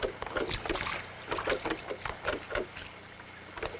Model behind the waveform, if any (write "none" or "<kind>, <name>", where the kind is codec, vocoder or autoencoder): none